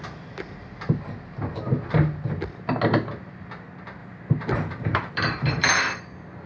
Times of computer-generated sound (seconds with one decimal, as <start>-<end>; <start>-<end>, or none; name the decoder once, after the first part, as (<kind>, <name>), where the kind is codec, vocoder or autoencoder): 4.0-5.7 (vocoder, BigVGAN v2)